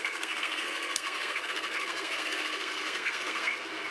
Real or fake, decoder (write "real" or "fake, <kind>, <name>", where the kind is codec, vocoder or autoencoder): fake, codec, SNAC